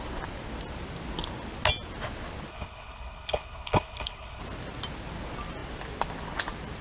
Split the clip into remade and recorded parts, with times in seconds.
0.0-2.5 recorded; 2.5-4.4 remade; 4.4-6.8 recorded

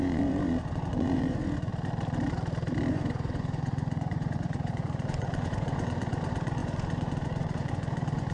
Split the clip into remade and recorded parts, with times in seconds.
0.0-1.7 remade; 1.7-2.9 recorded; 2.9-8.3 remade